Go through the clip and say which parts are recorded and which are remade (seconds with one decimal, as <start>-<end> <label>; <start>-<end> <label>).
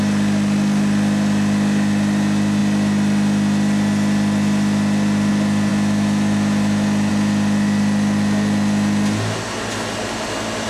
0.0-10.7 recorded